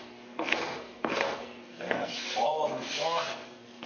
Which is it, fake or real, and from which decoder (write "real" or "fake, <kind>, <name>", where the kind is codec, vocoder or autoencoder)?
fake, codec, SNAC